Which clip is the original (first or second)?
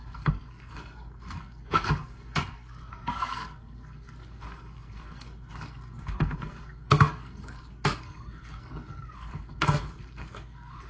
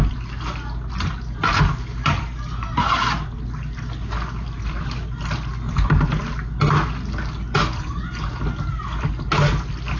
second